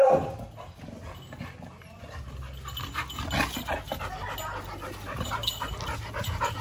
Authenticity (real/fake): real